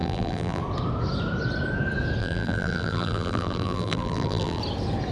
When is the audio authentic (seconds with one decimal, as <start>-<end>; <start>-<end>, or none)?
0.6-2.2; 4.6-5.1